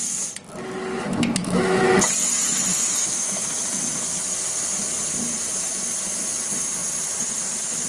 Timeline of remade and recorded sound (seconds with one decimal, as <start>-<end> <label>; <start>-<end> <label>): 0.0-1.0 recorded; 1.0-1.8 remade; 1.8-2.7 recorded; 2.7-3.5 remade; 3.5-7.9 recorded